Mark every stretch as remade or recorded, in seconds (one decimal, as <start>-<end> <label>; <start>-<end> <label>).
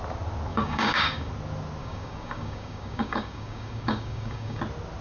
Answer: 0.0-0.5 recorded; 0.5-1.3 remade; 1.3-1.8 recorded; 1.8-4.6 remade; 4.6-5.0 recorded